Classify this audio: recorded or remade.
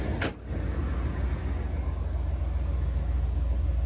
recorded